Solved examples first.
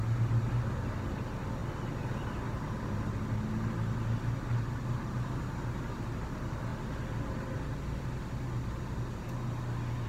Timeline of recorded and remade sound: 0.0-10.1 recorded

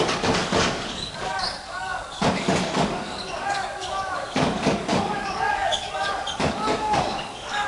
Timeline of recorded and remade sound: 0.0-7.7 remade

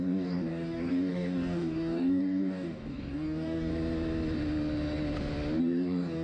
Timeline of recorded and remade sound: 0.0-3.7 remade; 3.7-5.6 recorded; 5.6-6.2 remade

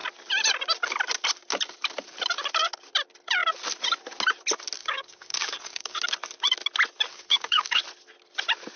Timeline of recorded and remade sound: 0.0-4.8 recorded; 4.8-6.0 remade; 6.0-7.1 recorded; 7.1-7.8 remade; 7.8-8.8 recorded

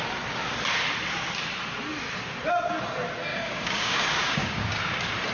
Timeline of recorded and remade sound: 0.0-3.3 recorded; 3.3-4.8 remade; 4.8-5.3 recorded